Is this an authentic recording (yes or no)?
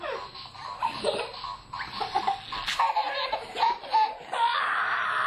yes